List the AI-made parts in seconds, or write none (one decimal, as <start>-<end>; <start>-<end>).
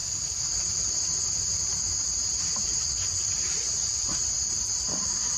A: none